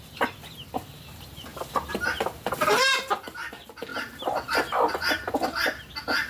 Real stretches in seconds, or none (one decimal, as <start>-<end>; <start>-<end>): 0.0-6.3